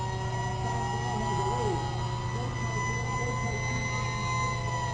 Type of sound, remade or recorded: recorded